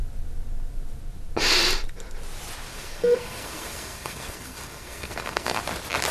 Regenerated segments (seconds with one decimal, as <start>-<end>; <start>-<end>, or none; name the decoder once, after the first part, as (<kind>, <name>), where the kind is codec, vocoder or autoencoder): 2.7-5.6 (codec, SNAC)